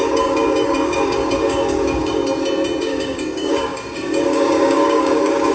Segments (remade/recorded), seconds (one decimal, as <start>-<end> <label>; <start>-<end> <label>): 0.0-2.2 remade; 2.2-2.8 recorded; 2.8-5.5 remade